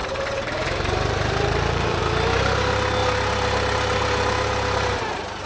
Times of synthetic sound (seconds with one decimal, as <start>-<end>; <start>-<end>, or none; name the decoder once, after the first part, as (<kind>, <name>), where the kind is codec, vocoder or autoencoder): 0.0-2.0 (vocoder, BigVGAN v2)

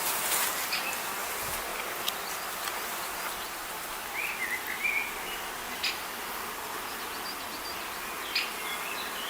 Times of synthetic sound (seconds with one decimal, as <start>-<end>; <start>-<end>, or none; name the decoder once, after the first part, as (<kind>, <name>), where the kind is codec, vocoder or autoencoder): 0.0-1.7 (vocoder, BigVGAN v2); 2.5-4.0; 8.8-9.3